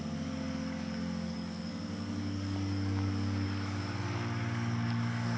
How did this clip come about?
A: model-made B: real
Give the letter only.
A